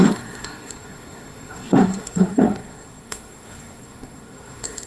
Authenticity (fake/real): fake